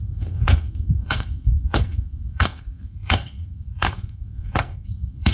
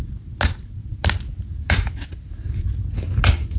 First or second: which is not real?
first